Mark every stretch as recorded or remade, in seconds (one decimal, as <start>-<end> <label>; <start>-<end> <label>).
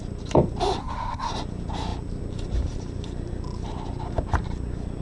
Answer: 0.0-0.8 recorded; 0.8-1.3 remade; 1.3-5.0 recorded